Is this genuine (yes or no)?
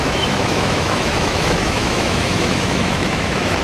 no